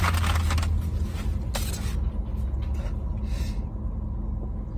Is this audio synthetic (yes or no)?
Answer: no